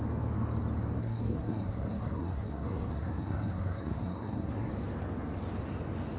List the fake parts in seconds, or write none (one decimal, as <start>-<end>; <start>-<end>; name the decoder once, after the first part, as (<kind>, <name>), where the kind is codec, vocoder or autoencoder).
1.0-4.7 (codec, SNAC)